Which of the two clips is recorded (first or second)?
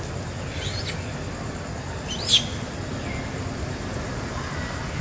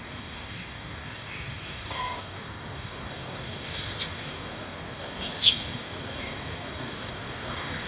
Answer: first